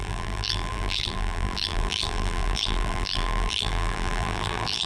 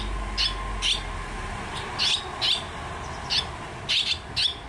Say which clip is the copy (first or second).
first